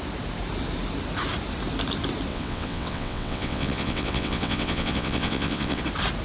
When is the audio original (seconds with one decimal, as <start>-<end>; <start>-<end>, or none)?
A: 0.0-2.3; 5.8-6.2